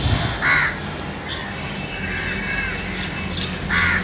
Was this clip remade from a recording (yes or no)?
no